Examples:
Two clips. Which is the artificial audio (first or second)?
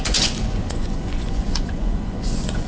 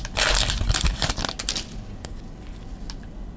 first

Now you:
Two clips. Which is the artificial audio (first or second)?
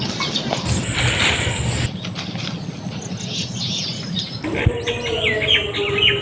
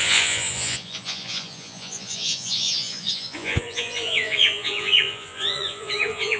second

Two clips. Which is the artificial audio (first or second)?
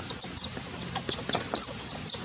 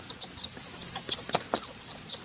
second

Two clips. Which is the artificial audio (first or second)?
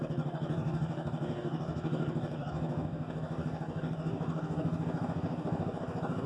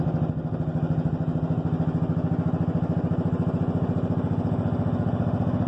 first